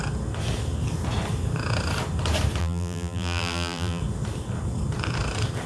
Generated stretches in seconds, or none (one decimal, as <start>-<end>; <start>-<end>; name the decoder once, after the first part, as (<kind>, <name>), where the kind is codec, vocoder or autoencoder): 2.6-4.0 (vocoder, BigVGAN v2)